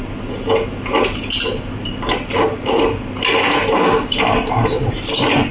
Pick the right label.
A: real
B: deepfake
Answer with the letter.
A